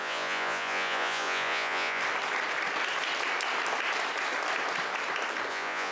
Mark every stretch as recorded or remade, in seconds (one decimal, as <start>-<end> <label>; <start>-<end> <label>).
0.0-2.0 remade; 2.0-5.5 recorded; 5.5-5.9 remade

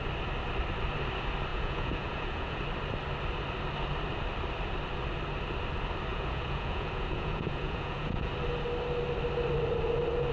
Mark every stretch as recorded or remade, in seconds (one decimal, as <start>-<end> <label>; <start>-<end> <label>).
0.0-1.5 recorded; 1.5-2.6 remade; 2.6-6.1 recorded; 6.1-8.3 remade; 8.3-10.3 recorded

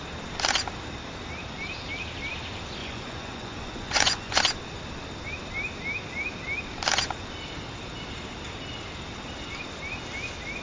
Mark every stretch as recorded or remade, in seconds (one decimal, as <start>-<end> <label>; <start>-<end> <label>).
0.0-2.8 recorded; 2.8-4.4 remade; 4.4-10.6 recorded

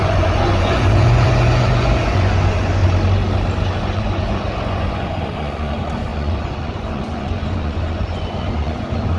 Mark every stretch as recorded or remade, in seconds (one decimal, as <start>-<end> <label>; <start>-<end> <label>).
0.0-2.8 remade; 2.8-3.7 recorded; 3.7-9.2 remade

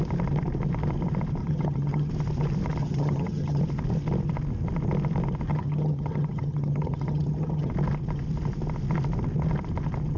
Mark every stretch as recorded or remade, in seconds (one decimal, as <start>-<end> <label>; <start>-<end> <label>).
0.0-1.4 recorded; 1.4-2.1 remade; 2.1-2.8 recorded; 2.8-3.6 remade; 3.6-5.5 recorded; 5.5-7.7 remade; 7.7-10.2 recorded

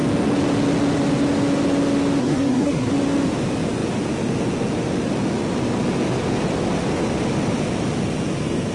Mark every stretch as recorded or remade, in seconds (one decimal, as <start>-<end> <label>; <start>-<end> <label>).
0.0-2.2 recorded; 2.2-2.9 remade; 2.9-8.7 recorded

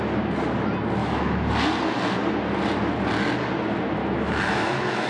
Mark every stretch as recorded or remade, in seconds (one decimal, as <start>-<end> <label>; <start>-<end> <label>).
0.0-1.0 recorded; 1.0-1.5 remade; 1.5-4.0 recorded; 4.0-5.1 remade

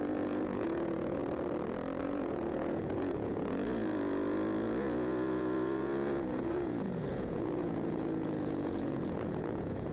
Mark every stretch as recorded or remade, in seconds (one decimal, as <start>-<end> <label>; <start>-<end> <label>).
0.0-1.2 remade; 1.2-2.0 recorded; 2.0-9.9 remade